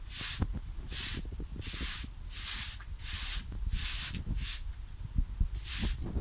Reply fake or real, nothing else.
real